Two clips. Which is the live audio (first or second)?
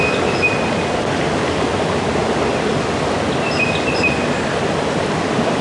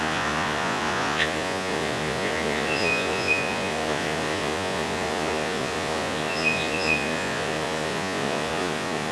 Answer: first